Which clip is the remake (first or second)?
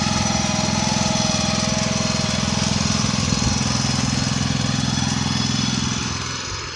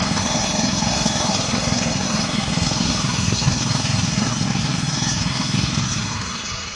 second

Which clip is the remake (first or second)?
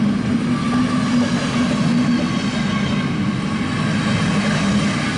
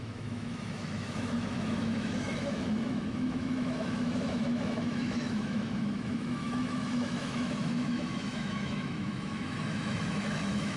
second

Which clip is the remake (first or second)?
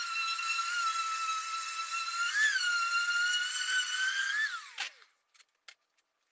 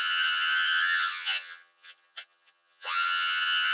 second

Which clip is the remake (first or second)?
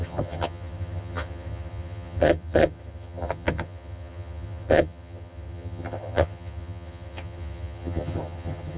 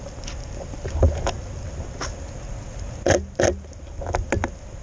first